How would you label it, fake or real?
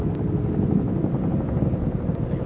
real